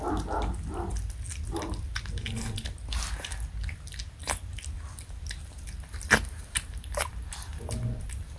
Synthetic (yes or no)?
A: no